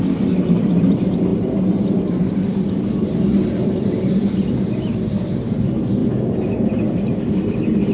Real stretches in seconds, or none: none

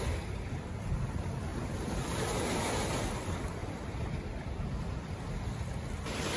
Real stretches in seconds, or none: 0.0-1.5; 3.1-3.6; 5.6-6.4

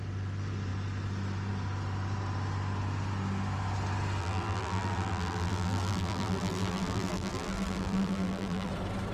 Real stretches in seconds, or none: 0.0-4.2; 8.7-9.1

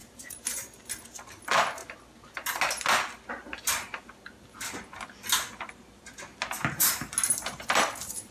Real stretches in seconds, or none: 0.5-8.3

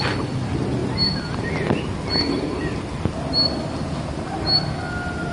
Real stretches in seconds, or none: 0.0-5.3

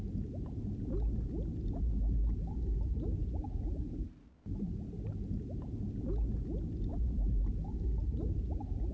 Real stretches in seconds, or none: 0.0-3.2; 4.8-6.9

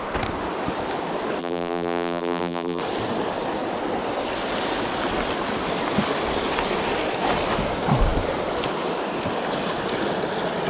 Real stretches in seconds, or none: 0.0-1.4; 2.8-10.7